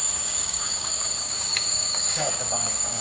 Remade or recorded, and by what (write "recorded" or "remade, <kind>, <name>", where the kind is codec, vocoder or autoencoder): remade, codec, DAC